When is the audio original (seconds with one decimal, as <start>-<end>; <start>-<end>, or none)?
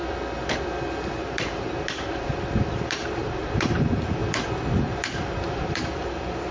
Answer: 0.0-1.2; 4.2-5.5